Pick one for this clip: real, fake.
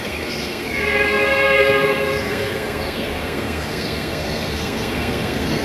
fake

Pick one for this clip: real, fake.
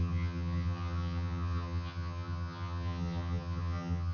fake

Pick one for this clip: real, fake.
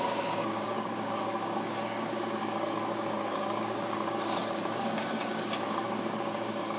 fake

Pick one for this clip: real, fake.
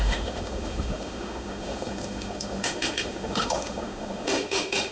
fake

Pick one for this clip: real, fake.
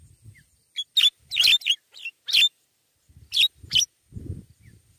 real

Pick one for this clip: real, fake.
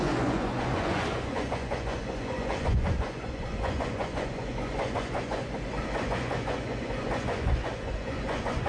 fake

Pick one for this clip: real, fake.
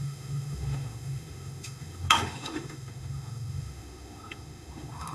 fake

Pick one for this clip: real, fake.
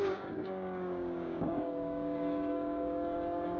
fake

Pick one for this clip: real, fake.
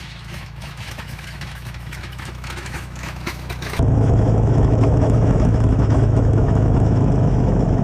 fake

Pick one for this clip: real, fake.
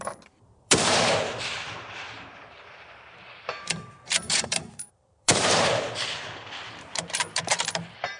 fake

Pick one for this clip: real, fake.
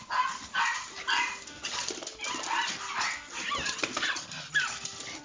fake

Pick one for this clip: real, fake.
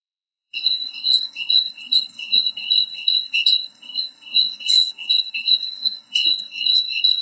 fake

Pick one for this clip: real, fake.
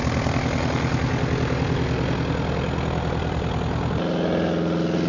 real